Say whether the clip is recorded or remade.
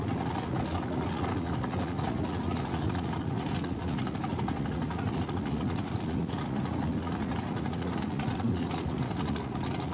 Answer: remade